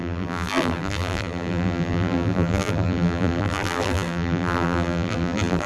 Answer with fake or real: fake